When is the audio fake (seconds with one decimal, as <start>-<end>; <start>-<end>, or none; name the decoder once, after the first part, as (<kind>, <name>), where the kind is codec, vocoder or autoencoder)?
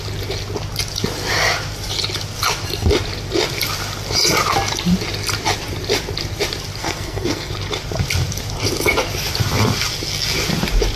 6.8-7.5 (codec, SNAC)